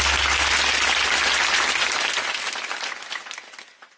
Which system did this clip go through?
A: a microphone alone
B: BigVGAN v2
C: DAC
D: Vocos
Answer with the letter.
A